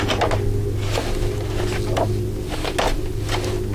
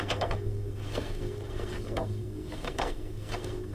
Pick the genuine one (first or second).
first